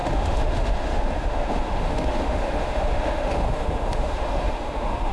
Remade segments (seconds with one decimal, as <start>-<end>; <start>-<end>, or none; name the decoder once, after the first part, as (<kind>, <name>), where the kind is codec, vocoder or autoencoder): 0.0-5.1 (autoencoder, DAC-VAE)